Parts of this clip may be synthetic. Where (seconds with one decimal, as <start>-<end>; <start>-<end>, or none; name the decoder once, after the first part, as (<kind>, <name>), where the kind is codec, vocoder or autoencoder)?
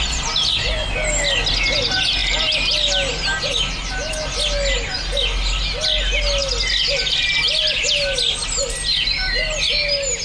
none